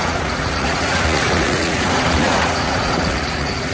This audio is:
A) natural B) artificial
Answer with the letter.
B